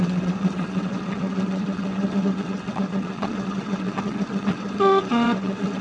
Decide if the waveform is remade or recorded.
remade